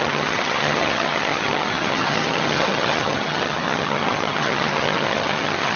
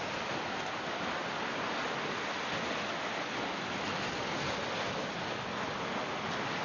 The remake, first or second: first